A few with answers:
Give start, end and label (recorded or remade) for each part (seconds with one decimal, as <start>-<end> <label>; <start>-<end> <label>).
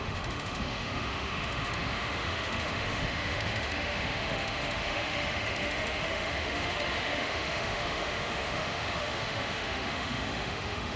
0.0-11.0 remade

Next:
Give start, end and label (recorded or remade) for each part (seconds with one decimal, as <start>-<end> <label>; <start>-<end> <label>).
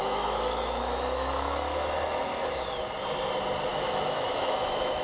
0.0-2.3 remade; 2.3-3.7 recorded; 3.7-5.0 remade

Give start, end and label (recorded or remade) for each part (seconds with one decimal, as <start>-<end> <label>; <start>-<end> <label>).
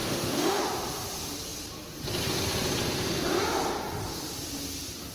0.0-0.6 remade; 0.6-5.1 recorded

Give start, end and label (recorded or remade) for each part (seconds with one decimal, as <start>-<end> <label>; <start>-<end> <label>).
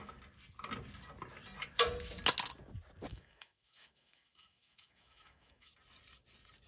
0.0-3.1 recorded; 3.1-5.7 remade; 5.7-6.7 recorded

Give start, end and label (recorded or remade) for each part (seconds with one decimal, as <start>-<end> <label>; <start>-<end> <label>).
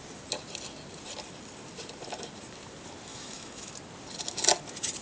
0.0-3.1 recorded; 3.1-3.7 remade; 3.7-5.0 recorded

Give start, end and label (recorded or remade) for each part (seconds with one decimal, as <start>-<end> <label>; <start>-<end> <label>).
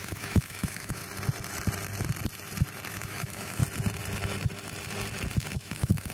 0.0-1.0 remade; 1.0-2.9 recorded; 2.9-3.6 remade; 3.6-5.5 recorded; 5.5-6.1 remade